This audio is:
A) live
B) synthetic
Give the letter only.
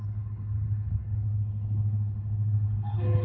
B